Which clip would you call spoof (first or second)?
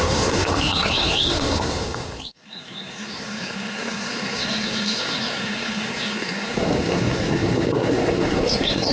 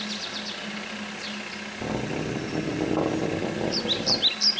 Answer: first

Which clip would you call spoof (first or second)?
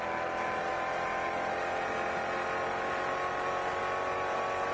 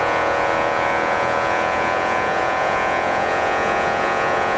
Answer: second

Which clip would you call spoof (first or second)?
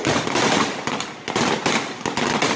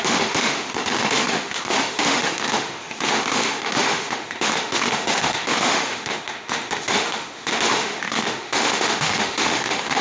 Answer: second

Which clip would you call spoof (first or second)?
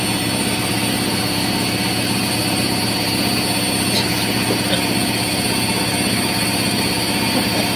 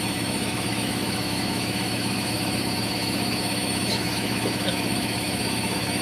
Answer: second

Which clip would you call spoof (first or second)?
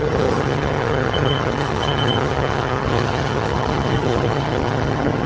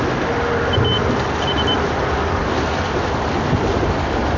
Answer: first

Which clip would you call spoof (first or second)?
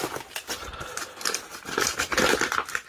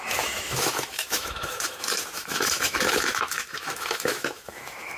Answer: second